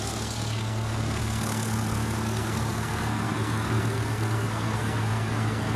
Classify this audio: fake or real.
fake